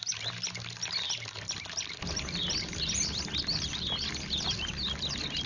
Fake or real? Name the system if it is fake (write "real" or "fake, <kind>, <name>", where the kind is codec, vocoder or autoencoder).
real